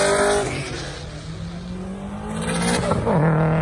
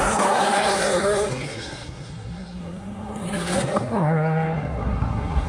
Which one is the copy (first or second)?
second